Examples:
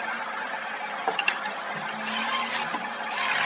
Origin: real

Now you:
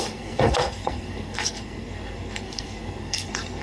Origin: fake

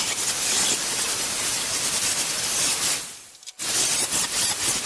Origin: real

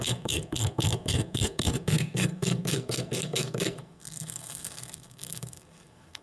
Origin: fake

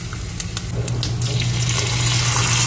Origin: real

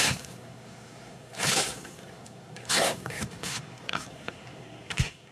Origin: fake